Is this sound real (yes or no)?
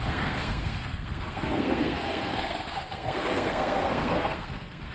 no